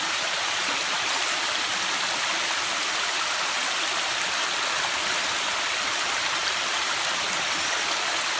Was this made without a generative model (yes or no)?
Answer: yes